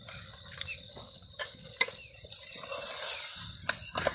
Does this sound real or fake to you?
real